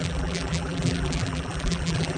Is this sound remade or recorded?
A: remade